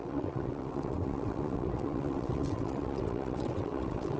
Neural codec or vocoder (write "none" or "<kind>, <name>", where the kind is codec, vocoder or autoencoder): vocoder, WaveNeXt